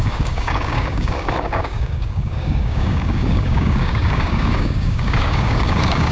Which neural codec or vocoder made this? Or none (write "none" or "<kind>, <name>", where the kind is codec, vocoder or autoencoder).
codec, DAC